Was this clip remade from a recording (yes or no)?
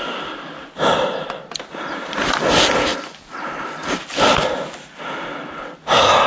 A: no